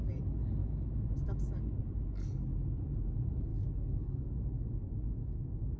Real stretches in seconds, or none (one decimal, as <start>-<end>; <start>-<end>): 0.0-0.6; 1.8-3.5